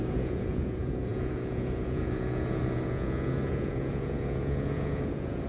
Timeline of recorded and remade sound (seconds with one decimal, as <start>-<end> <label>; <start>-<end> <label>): 0.0-5.5 remade